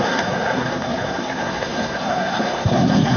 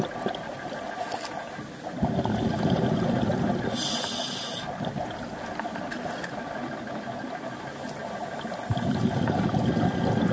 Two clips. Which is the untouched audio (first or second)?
second